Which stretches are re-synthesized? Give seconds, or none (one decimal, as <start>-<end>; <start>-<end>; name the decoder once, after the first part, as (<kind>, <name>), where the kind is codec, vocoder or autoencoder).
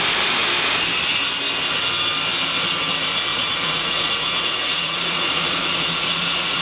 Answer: 3.3-6.6 (vocoder, Vocos)